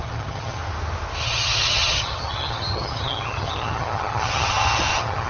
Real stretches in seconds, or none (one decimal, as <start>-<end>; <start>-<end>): 0.6-1.2